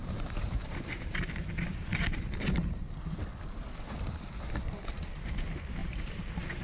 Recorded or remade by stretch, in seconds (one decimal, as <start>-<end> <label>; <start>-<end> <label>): 0.0-3.3 remade; 3.3-4.5 recorded; 4.5-6.6 remade